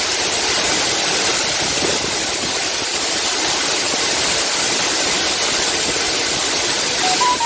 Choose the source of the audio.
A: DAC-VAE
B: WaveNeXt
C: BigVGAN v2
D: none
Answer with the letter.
C